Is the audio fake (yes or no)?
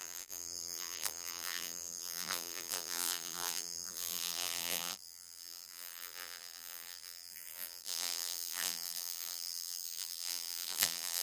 yes